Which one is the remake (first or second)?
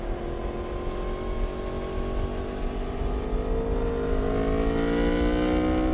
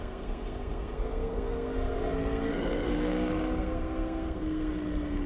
second